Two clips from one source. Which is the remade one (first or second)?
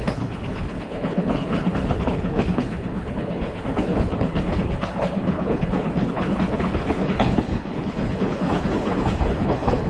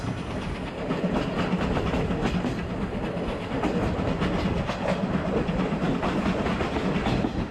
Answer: first